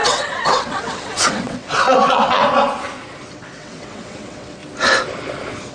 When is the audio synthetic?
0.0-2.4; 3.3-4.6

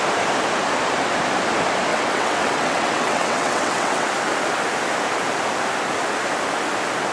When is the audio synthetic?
1.9-4.1

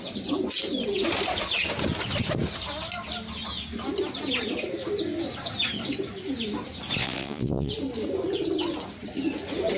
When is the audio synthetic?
7.0-7.7